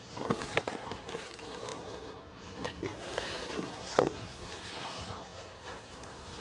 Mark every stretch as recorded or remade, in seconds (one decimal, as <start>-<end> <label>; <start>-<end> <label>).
0.0-6.4 remade